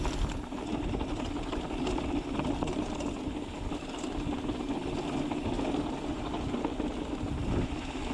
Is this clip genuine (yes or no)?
yes